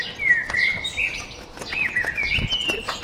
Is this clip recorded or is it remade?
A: recorded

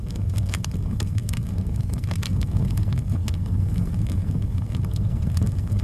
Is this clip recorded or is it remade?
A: remade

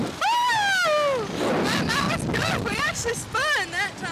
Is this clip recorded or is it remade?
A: recorded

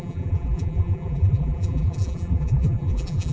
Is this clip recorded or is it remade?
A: remade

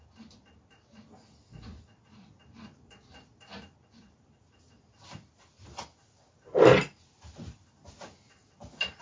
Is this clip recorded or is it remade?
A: recorded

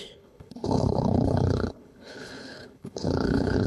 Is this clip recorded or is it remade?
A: remade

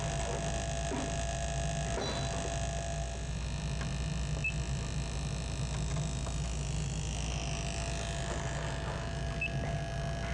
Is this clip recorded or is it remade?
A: recorded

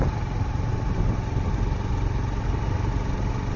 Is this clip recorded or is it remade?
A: recorded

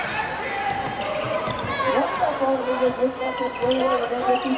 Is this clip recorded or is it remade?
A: recorded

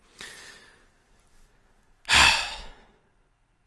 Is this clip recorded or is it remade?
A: recorded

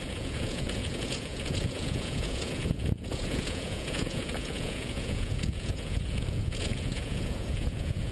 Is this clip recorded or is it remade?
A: remade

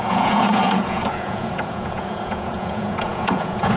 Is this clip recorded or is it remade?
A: remade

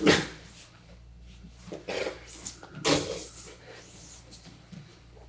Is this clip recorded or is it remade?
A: recorded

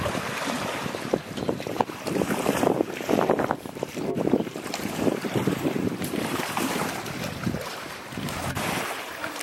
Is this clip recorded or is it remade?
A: remade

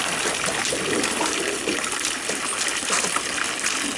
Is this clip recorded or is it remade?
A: remade